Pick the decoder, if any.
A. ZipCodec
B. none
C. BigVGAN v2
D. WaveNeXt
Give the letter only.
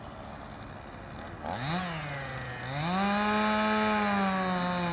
B